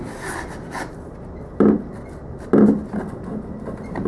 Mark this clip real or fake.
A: real